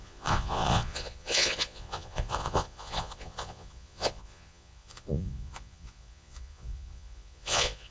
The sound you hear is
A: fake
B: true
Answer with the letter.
A